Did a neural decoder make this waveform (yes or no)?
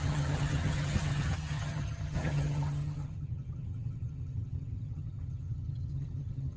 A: yes